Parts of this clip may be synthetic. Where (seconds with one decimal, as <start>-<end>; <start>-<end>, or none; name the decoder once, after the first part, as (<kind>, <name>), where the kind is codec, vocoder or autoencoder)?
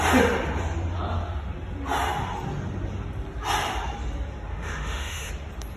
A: 4.5-5.3 (autoencoder, DAC-VAE)